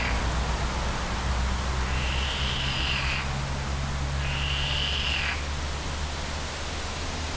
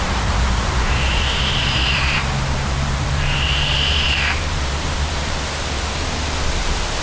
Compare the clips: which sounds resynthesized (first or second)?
second